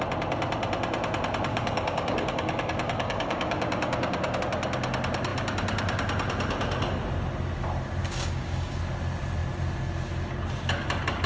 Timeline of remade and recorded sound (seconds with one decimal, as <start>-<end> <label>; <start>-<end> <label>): 0.0-1.5 recorded; 1.5-4.4 remade; 4.4-8.0 recorded; 8.0-8.8 remade; 8.8-11.3 recorded